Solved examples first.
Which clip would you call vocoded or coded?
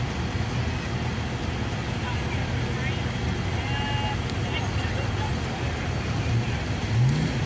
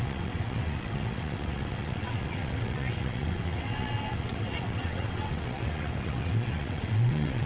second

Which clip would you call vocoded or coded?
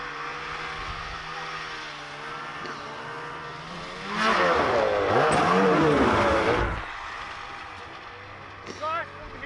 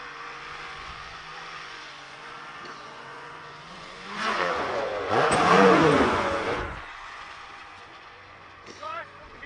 second